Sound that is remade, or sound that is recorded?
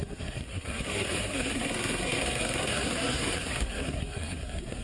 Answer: remade